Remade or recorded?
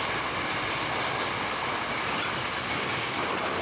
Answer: recorded